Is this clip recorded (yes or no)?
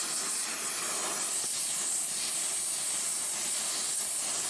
yes